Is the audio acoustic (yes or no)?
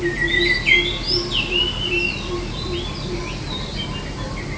yes